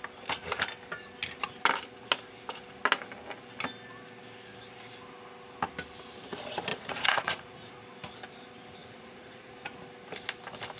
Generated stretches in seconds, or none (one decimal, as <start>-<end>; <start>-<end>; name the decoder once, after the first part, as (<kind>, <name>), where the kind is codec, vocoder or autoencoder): 6.7-7.7 (vocoder, Vocos); 8.8-9.5

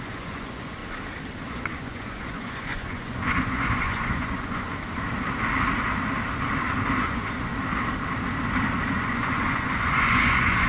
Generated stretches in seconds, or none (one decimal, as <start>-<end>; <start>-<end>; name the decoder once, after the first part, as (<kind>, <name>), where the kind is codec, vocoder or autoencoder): 0.0-0.8 (vocoder, Vocos); 1.5-4.7; 7.0-7.5; 8.9-10.7

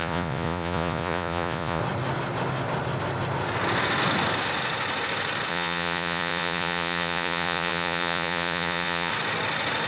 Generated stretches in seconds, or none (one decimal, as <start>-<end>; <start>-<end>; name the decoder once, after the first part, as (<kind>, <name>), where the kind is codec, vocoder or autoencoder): 0.0-1.8 (vocoder, Vocos); 5.5-9.1

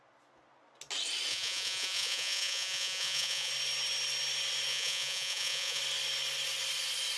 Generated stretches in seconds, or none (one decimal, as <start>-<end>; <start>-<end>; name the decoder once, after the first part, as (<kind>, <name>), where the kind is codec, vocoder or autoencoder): 1.3-3.5 (vocoder, Vocos); 4.7-5.8

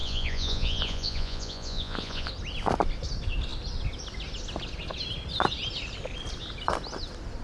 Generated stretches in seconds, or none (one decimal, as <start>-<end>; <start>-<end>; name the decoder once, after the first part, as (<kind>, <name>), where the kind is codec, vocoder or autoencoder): 0.0-2.3 (vocoder, Vocos)

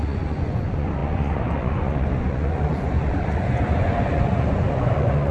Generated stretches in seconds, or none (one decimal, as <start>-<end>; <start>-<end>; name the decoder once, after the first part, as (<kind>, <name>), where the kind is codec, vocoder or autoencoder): 0.0-5.3 (vocoder, Vocos)

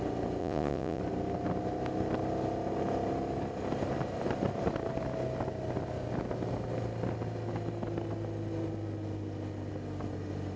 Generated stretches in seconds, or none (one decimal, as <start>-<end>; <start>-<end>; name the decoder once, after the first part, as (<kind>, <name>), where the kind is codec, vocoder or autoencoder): 0.4-1.0 (vocoder, Vocos)

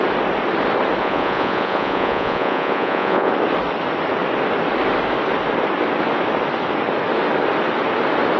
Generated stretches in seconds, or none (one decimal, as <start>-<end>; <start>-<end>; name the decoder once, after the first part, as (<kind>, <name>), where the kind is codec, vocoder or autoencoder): 1.0-3.3 (vocoder, Vocos)